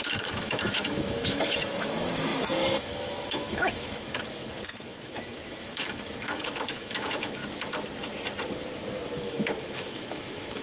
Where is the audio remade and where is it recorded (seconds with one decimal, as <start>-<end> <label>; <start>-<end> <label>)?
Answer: 0.0-7.4 remade; 7.4-9.2 recorded; 9.2-10.6 remade

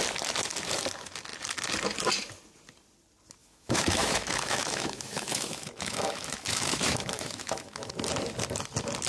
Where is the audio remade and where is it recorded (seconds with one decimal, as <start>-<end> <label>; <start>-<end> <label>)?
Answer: 0.0-3.4 recorded; 3.4-7.9 remade; 7.9-9.1 recorded